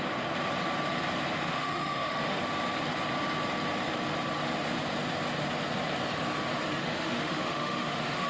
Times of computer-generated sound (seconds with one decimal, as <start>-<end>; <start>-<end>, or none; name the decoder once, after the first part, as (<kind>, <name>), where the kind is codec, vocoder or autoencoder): 1.5-2.4 (autoencoder, DAC-VAE); 6.8-8.3